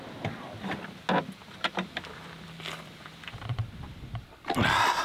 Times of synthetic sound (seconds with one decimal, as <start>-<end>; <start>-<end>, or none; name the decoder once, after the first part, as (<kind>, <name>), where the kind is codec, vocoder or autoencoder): 1.4-4.4 (vocoder, BigVGAN v2)